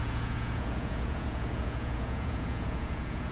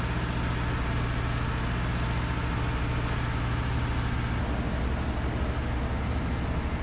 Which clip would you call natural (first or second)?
second